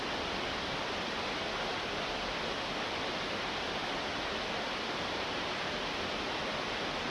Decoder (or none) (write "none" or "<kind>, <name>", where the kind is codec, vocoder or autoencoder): none